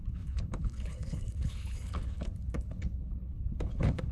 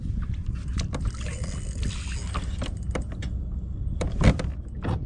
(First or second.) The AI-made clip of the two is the first